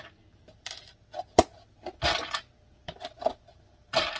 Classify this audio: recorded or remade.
recorded